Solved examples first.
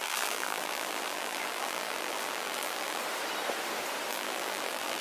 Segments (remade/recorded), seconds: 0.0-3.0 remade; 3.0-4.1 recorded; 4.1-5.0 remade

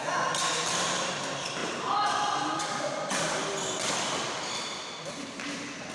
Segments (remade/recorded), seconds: 0.0-5.9 recorded

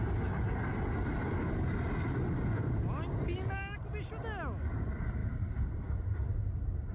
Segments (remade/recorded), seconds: 0.0-5.2 recorded; 5.2-5.9 remade; 5.9-6.9 recorded

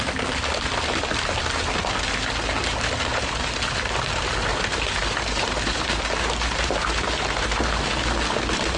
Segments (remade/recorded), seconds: 0.0-4.5 recorded; 4.5-7.6 remade; 7.6-8.8 recorded

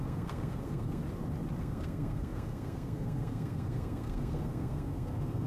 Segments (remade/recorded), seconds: 0.0-1.0 remade; 1.0-1.6 recorded; 1.6-5.5 remade

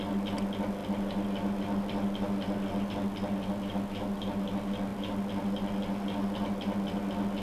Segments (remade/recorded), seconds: 0.0-7.4 recorded